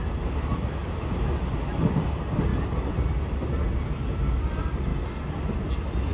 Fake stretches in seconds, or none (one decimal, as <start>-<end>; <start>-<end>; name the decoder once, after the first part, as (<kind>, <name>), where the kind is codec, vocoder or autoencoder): 0.8-1.6 (vocoder, BigVGAN v2)